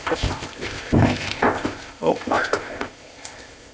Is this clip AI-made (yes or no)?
yes